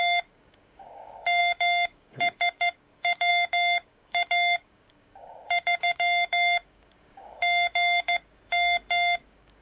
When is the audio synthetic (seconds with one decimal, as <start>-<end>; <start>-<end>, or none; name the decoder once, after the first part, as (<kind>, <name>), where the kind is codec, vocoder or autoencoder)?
0.0-9.6 (codec, DAC)